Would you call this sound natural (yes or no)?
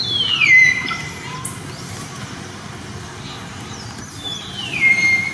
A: yes